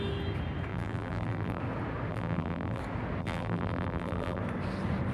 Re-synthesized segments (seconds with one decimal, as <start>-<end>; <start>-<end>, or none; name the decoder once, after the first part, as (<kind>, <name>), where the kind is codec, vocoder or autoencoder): 0.7-1.6 (vocoder, BigVGAN v2); 2.1-2.8; 3.2-4.4